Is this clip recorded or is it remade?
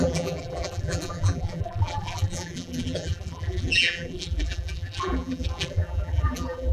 remade